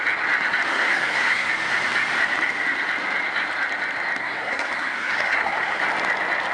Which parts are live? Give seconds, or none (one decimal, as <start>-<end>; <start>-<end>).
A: 0.0-0.7; 1.5-4.2; 5.8-6.5